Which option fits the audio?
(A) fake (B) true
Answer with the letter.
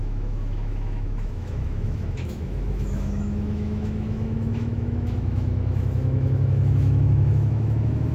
A